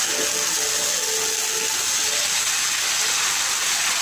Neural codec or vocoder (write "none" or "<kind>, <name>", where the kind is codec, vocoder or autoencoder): none